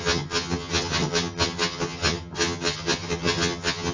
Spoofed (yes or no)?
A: yes